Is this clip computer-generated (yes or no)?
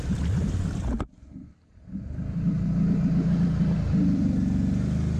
no